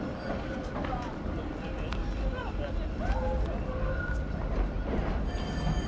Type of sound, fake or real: real